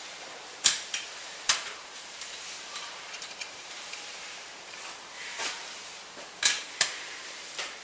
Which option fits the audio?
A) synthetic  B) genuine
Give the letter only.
A